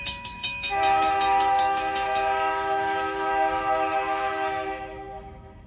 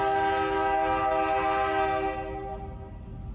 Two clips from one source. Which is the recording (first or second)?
second